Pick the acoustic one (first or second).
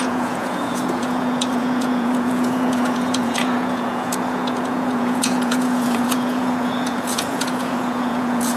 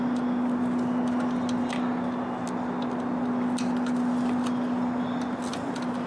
second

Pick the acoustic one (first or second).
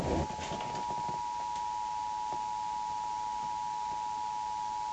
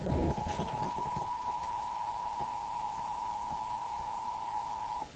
first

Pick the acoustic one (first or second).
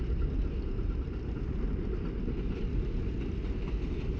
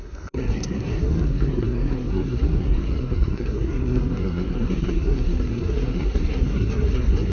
first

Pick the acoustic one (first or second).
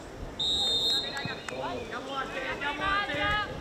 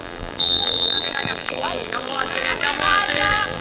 first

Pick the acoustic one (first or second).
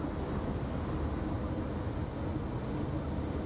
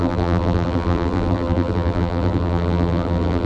first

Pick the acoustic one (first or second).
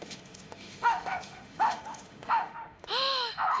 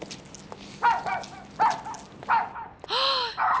second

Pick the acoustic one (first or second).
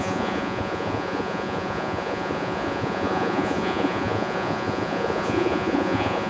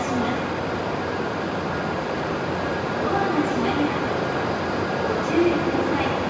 second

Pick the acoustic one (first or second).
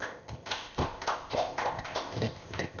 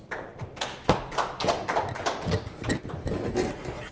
second